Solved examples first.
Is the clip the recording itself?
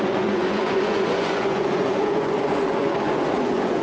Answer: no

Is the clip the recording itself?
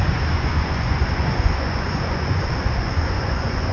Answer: no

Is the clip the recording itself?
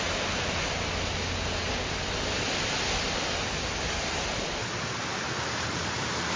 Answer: yes